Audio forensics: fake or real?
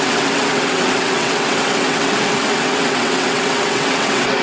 fake